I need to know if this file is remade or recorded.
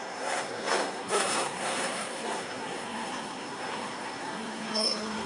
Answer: remade